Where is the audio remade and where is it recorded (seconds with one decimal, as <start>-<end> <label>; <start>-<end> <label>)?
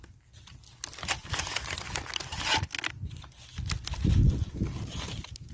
0.0-5.5 recorded